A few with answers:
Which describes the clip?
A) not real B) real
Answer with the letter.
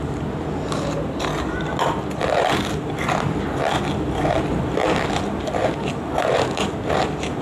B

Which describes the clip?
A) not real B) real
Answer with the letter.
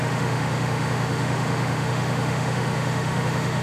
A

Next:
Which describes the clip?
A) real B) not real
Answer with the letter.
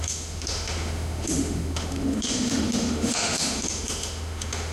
B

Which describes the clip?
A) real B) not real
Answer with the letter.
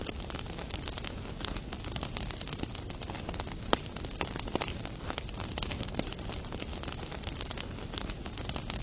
A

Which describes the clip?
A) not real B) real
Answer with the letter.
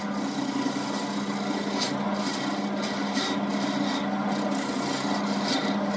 B